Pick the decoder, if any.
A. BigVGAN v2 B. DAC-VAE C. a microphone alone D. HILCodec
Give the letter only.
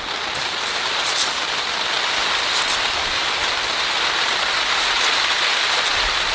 A